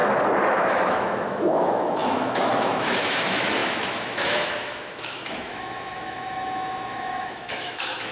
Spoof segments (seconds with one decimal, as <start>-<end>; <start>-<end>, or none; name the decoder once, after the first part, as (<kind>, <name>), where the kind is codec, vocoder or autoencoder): 0.5-8.1 (autoencoder, DAC-VAE)